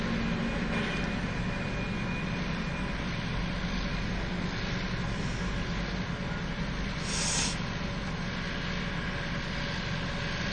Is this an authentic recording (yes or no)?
yes